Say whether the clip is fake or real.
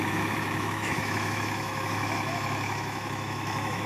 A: fake